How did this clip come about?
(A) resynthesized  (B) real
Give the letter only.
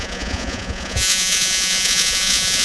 A